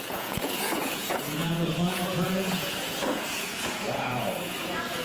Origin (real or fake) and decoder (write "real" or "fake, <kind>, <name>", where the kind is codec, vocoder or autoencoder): fake, vocoder, Vocos